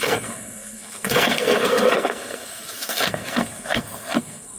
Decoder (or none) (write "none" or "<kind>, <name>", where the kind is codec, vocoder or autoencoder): codec, SNAC